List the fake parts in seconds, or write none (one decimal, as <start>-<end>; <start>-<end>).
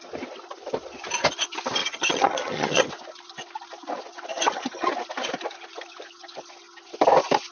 1.8-2.9; 4.3-4.9